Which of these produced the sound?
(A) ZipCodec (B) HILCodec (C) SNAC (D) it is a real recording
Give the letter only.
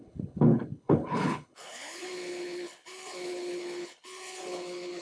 B